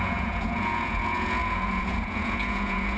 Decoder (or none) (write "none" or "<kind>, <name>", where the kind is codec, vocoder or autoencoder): vocoder, Vocos